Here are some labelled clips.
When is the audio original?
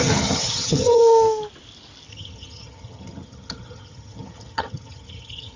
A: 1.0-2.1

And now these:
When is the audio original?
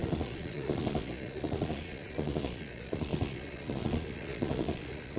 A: none